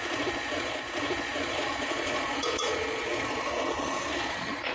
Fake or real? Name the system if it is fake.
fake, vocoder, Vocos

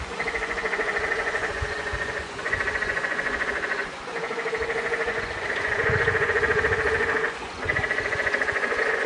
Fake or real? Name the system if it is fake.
fake, vocoder, Vocos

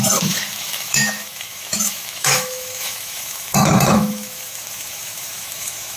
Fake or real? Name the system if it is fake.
fake, autoencoder, DAC-VAE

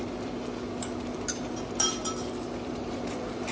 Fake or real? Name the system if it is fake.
real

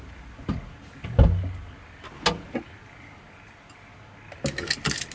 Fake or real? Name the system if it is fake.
real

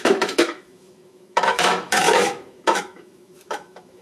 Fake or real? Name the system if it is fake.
fake, autoencoder, DAC-VAE